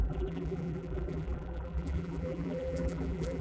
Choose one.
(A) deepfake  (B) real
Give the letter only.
A